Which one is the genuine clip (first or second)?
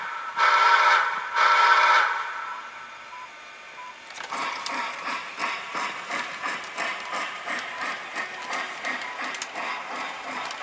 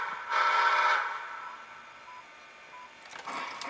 second